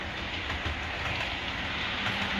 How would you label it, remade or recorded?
recorded